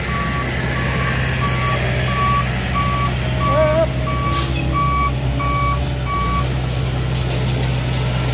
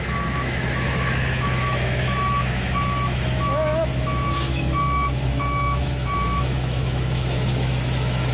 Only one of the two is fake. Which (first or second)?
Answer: second